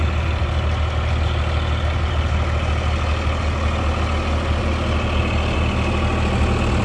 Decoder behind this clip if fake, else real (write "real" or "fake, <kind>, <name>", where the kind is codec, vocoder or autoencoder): real